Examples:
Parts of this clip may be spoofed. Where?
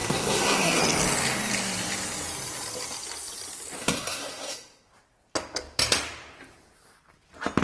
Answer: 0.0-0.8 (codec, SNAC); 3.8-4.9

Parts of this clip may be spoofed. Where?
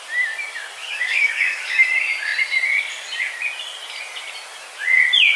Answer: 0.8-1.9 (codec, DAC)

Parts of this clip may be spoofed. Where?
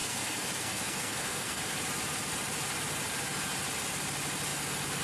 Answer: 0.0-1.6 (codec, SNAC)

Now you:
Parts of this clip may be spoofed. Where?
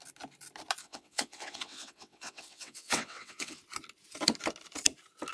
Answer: 0.8-3.6 (vocoder, WaveNeXt)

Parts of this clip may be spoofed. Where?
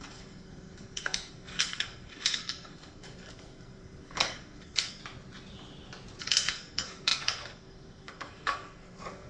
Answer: 0.0-5.0 (codec, SNAC); 6.2-9.3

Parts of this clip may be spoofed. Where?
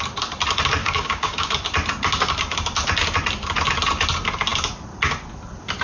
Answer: 0.8-1.5 (codec, DAC)